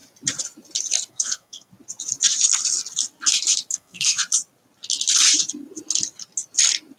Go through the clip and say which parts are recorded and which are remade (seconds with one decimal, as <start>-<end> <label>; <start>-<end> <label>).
0.0-1.1 recorded; 1.1-1.7 remade; 1.7-3.7 recorded; 3.7-4.2 remade; 4.2-7.0 recorded